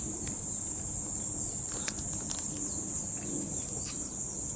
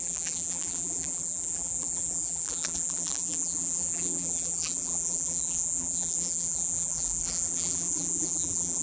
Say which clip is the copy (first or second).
second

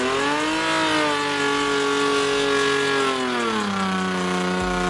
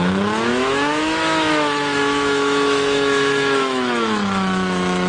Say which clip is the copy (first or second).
second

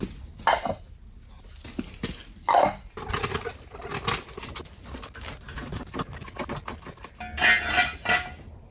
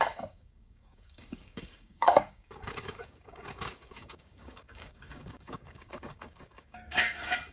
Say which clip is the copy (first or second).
second